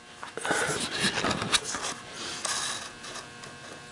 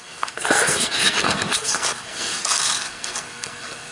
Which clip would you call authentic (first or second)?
first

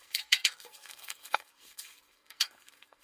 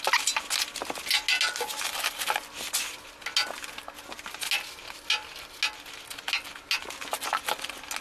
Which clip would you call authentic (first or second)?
second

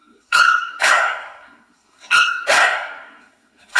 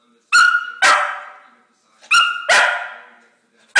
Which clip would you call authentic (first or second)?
second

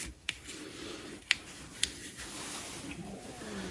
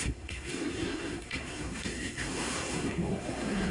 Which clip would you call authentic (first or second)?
first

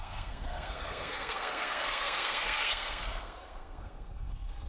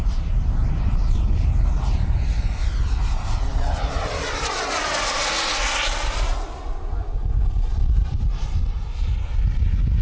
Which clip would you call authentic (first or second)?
second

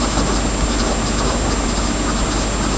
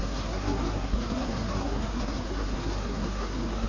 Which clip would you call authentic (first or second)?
first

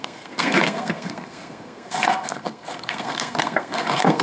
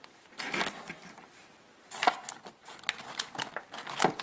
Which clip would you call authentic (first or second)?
second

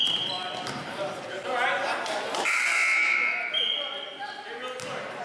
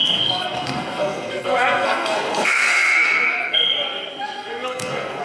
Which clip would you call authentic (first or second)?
first